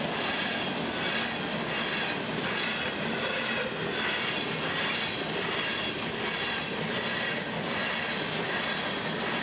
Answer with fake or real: real